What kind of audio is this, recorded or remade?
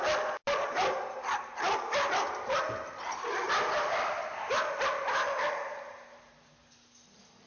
recorded